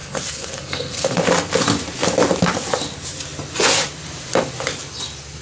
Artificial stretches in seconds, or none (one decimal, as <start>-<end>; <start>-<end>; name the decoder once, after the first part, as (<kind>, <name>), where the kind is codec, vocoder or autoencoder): 0.0-1.2 (codec, SNAC)